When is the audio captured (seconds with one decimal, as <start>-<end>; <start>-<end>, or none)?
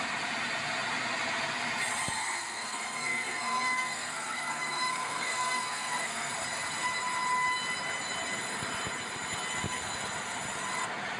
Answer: 0.0-2.2; 6.3-11.2